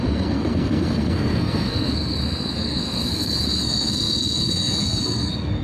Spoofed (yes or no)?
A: yes